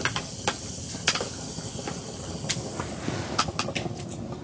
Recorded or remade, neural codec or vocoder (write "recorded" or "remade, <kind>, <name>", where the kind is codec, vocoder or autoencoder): recorded